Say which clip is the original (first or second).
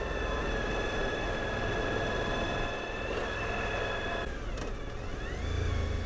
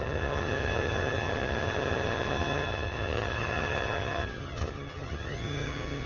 first